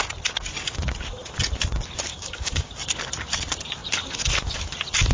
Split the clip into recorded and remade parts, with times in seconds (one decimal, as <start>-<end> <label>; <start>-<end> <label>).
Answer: 0.0-2.1 recorded; 2.1-2.7 remade; 2.7-5.1 recorded